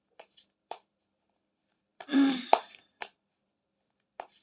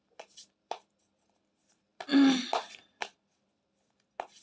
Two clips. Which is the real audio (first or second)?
second